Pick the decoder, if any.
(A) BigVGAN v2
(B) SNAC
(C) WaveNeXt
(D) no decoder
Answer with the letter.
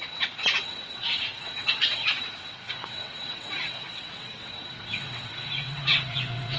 C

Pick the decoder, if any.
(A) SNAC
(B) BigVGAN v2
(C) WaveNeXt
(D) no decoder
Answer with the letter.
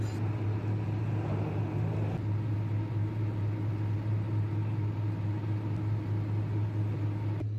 D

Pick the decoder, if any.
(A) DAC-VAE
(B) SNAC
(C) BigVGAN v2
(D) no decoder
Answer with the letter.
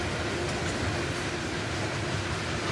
D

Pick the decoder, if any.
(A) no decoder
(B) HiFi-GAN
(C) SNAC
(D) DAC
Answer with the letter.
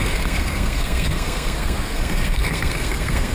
C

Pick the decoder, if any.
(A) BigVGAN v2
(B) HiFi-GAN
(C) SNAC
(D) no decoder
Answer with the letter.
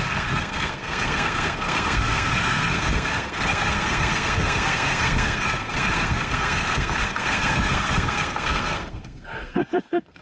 C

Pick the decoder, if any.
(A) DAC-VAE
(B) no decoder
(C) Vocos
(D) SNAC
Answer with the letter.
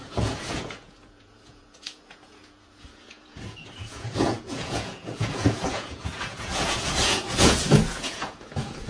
C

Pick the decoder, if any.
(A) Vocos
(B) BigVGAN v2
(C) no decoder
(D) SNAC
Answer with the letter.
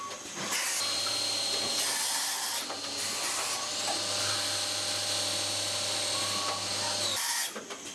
C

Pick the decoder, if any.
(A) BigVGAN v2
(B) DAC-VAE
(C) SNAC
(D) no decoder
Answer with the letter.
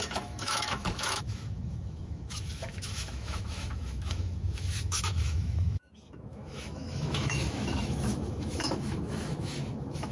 B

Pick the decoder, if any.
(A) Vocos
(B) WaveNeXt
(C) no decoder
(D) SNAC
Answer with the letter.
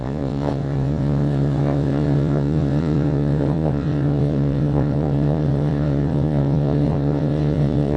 B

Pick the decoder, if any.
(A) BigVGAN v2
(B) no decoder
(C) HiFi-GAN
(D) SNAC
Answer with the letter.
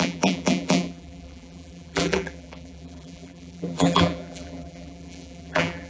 A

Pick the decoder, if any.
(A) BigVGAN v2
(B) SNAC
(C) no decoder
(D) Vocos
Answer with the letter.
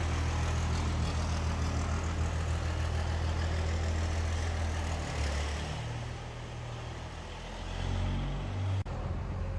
C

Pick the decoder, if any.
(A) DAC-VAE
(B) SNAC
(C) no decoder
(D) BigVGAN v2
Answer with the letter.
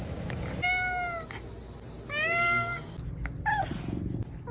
C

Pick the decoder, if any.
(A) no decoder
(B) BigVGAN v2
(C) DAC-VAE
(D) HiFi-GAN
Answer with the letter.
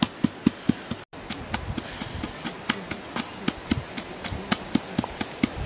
A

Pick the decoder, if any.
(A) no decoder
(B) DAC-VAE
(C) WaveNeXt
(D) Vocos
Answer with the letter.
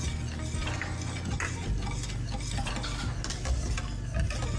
A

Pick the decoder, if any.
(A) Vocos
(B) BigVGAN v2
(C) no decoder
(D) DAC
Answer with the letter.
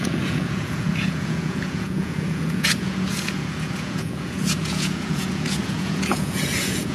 A